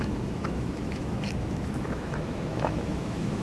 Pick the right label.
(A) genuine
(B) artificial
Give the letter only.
B